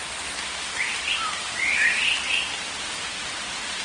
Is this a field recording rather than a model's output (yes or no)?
yes